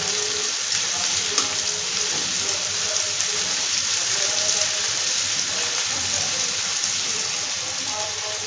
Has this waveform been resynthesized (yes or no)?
yes